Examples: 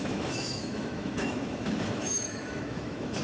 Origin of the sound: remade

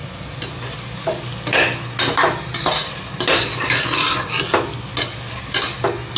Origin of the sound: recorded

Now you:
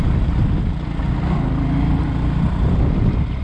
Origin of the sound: recorded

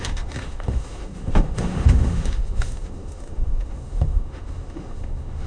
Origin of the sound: remade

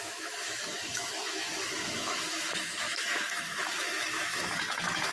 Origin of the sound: remade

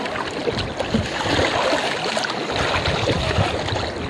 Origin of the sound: recorded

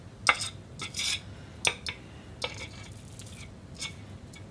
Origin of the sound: recorded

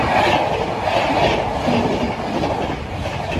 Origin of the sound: recorded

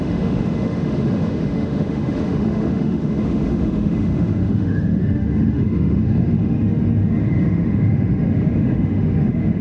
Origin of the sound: remade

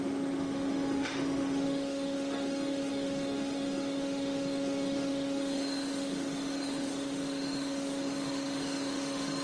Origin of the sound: remade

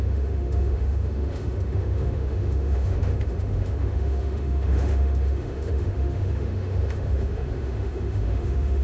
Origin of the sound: remade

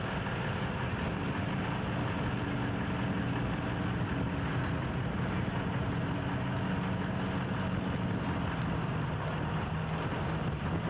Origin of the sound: recorded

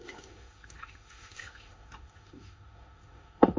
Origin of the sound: remade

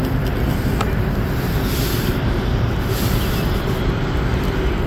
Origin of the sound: recorded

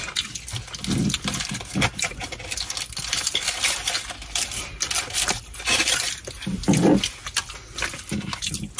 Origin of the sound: recorded